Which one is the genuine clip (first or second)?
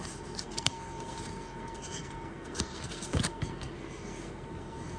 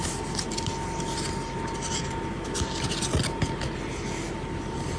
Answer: second